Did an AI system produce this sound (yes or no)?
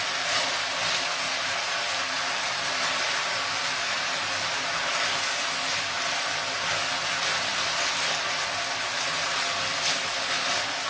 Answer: no